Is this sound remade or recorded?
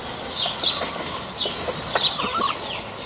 recorded